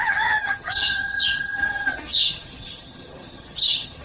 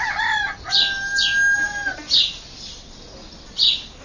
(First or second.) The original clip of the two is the second